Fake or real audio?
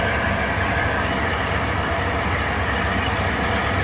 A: real